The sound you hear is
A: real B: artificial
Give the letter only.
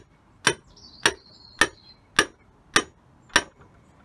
A